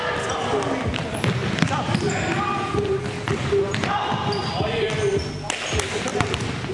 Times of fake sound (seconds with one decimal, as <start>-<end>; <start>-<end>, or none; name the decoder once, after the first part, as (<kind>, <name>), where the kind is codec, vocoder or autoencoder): none